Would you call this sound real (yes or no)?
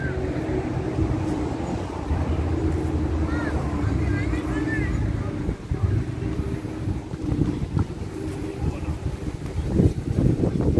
yes